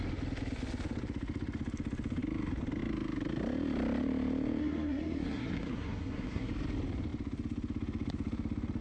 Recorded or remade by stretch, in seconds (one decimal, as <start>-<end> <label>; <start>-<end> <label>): 0.0-4.6 recorded; 4.6-6.5 remade; 6.5-8.8 recorded